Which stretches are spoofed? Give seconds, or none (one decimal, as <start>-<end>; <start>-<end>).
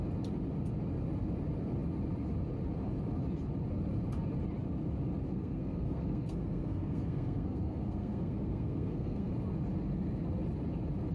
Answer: 5.3-9.3